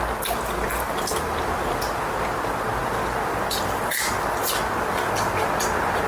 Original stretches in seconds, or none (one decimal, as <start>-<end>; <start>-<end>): 0.0-6.1